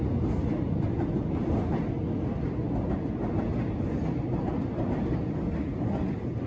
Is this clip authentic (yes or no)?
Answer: yes